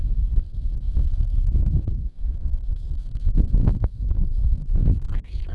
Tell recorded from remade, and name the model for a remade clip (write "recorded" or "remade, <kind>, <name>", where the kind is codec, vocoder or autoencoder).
remade, codec, SNAC